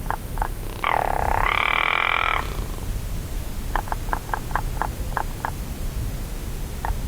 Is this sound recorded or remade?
recorded